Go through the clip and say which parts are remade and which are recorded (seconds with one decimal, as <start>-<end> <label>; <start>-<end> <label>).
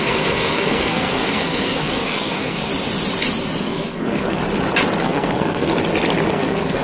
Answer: 0.0-2.7 remade; 2.7-3.6 recorded; 3.6-4.4 remade; 4.4-5.0 recorded; 5.0-5.7 remade; 5.7-6.3 recorded; 6.3-6.8 remade